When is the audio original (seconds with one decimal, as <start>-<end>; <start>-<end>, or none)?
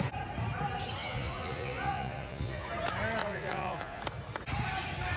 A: 0.0-1.0; 2.7-3.2; 4.0-5.2